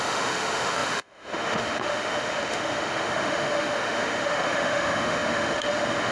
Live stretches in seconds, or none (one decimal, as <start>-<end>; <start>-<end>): none